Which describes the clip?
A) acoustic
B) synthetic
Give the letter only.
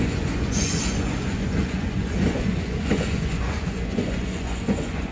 B